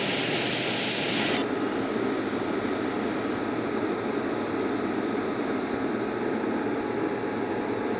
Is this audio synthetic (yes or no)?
no